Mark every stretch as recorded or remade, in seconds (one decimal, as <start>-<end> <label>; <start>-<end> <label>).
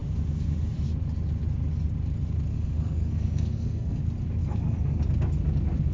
0.0-2.5 recorded; 2.5-4.0 remade; 4.0-4.4 recorded; 4.4-5.0 remade; 5.0-5.9 recorded